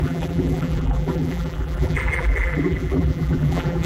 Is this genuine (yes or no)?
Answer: no